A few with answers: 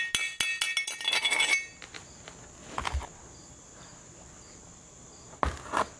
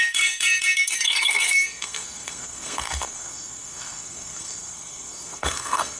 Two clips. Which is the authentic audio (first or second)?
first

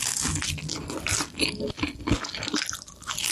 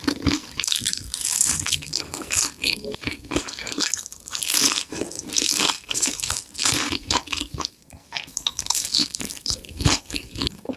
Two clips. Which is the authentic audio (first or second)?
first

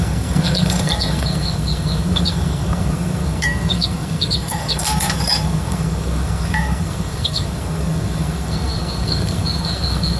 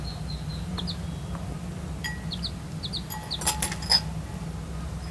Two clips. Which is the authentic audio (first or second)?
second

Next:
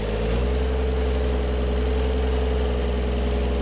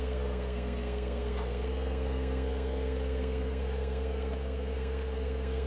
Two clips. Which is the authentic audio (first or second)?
first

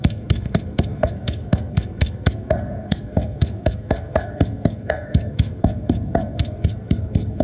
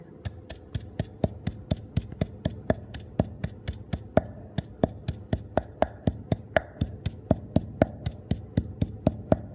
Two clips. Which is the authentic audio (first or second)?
second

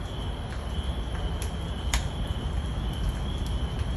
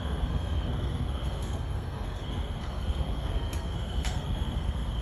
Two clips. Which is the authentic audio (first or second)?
first